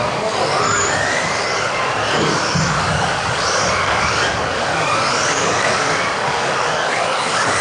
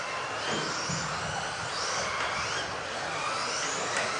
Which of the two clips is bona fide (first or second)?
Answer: second